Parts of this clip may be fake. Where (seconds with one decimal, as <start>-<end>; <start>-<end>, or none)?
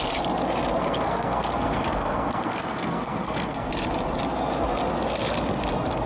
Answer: 0.8-3.7